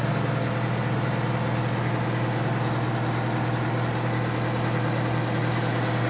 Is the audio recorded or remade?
recorded